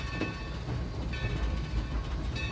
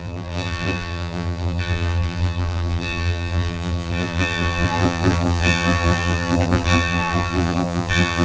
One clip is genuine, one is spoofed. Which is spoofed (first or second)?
second